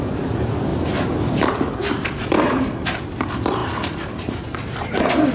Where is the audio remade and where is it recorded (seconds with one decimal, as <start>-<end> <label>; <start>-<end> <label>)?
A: 0.0-0.7 recorded; 0.7-3.0 remade; 3.0-3.6 recorded; 3.6-5.3 remade